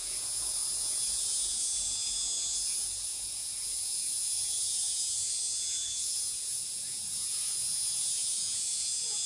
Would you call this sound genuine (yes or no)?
no